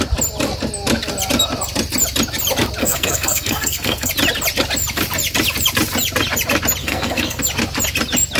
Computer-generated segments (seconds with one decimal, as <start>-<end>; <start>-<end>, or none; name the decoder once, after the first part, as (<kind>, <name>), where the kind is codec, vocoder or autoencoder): 2.8-4.1 (codec, SNAC); 6.8-7.4